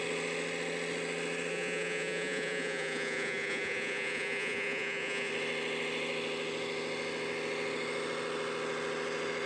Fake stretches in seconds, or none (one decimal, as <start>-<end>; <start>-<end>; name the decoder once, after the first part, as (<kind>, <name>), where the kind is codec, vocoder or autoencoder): 1.5-5.3 (vocoder, Vocos)